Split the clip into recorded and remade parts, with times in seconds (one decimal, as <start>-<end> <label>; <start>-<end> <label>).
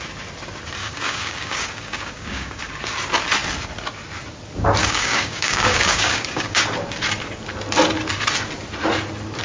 0.0-0.8 recorded; 0.8-2.6 remade; 2.6-4.8 recorded; 4.8-6.6 remade; 6.6-9.4 recorded